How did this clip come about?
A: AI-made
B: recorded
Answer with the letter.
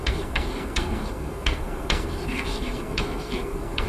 A